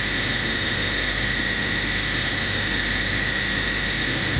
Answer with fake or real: fake